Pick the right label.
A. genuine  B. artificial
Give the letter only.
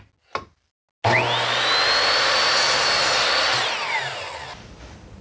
A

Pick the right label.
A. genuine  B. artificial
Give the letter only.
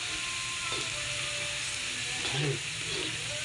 A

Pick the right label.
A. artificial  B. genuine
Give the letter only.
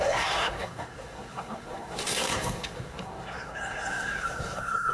A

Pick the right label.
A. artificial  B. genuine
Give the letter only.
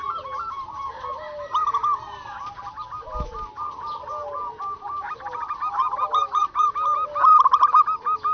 B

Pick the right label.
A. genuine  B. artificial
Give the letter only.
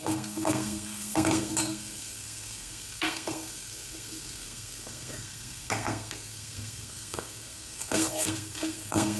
B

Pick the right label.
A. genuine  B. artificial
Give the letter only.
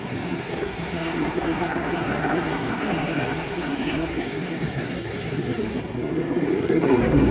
B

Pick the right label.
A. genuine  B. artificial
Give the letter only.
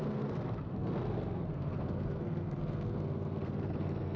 B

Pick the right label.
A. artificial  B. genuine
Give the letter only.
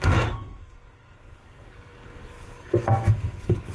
A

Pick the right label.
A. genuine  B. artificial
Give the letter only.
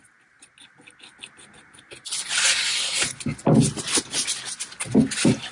A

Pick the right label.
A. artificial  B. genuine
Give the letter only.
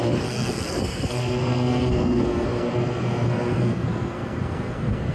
A